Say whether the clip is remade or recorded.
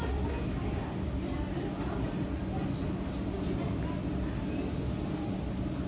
recorded